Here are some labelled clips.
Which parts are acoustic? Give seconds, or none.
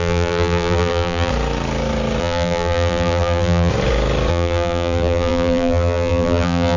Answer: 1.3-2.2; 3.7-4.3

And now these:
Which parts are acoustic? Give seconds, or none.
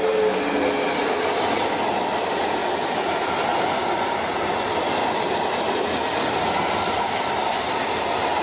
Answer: 0.0-8.4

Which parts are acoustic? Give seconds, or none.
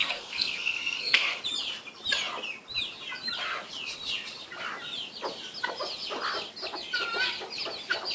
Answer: 1.4-8.1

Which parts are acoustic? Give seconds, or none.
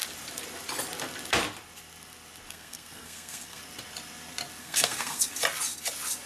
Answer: 0.0-2.5; 3.6-4.6; 5.3-6.3